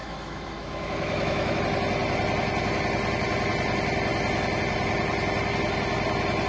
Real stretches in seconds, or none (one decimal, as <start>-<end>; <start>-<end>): 1.6-6.5